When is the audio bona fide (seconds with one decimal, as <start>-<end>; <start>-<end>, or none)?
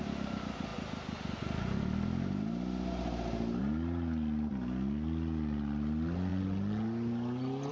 0.0-7.7